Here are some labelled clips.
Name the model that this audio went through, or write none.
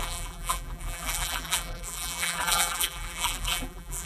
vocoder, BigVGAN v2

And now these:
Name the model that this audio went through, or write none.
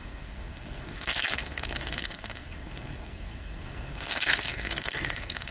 codec, SNAC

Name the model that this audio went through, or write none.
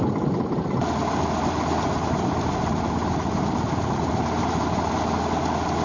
none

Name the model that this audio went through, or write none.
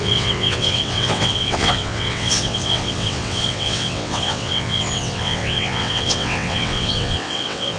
vocoder, WaveNeXt